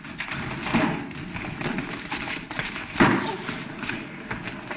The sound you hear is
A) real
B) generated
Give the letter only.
A